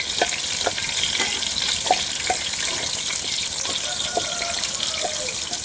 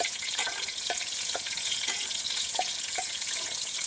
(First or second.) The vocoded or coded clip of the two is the second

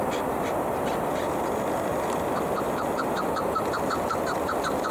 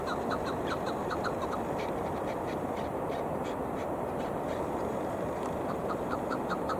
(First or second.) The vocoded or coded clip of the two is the second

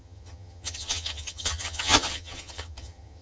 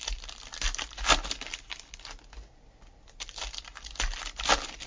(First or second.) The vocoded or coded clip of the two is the first